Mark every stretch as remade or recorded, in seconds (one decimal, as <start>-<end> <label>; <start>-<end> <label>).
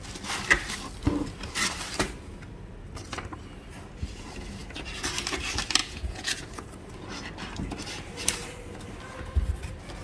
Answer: 0.0-5.8 recorded; 5.8-6.4 remade; 6.4-10.0 recorded